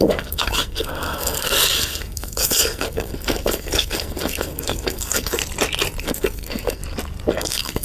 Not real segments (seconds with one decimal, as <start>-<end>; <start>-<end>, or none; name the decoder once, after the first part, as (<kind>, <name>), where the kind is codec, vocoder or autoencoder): 0.0-5.4 (codec, SNAC); 6.0-6.8; 7.3-7.8